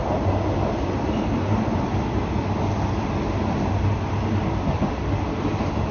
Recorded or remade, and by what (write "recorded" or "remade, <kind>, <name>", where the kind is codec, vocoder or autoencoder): recorded